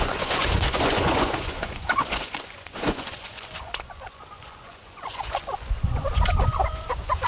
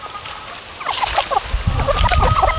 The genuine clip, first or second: second